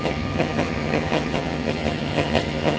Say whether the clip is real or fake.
fake